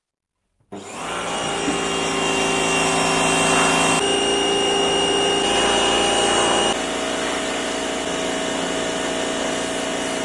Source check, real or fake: real